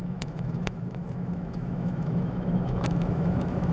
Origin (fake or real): fake